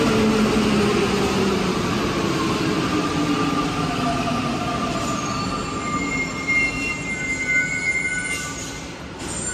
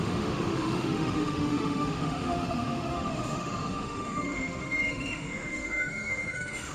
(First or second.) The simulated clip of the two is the second